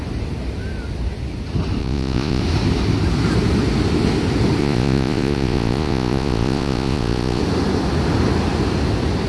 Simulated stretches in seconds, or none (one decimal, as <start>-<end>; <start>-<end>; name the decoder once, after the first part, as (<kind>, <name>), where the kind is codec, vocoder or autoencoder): 1.8-2.4 (vocoder, Vocos); 4.6-7.4